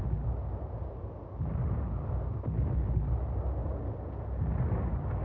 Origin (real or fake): real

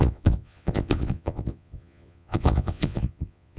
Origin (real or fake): fake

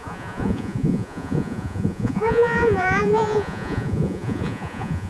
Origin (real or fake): fake